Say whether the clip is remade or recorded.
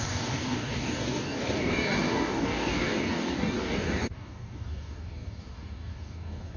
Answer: remade